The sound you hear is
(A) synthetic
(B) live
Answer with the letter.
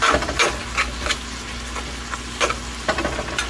B